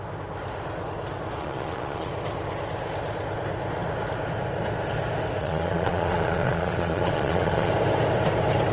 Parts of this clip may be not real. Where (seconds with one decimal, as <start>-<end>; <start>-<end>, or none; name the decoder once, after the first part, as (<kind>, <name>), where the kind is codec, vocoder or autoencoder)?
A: 1.4-2.1 (vocoder, Vocos); 5.4-7.7